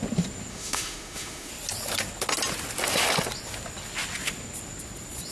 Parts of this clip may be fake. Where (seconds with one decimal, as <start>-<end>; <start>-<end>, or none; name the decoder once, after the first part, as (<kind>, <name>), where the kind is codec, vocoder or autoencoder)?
0.5-1.5 (autoencoder, DAC-VAE)